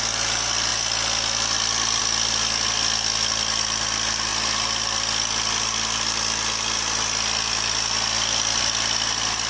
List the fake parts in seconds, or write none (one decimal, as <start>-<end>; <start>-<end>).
none